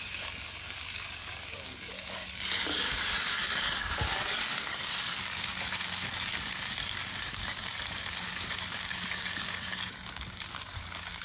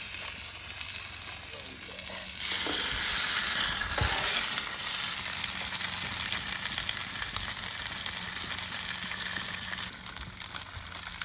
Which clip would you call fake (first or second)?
first